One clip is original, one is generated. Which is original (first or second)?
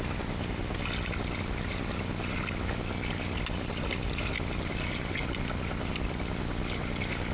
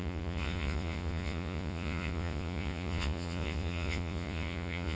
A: first